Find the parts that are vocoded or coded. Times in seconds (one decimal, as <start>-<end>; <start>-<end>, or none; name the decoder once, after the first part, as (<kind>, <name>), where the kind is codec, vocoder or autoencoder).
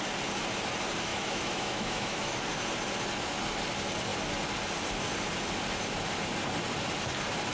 1.1-2.3 (autoencoder, DAC-VAE)